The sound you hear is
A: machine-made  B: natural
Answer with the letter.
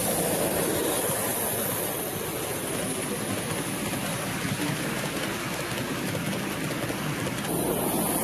B